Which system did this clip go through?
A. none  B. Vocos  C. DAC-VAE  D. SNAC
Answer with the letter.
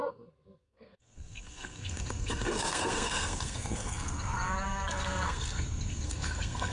D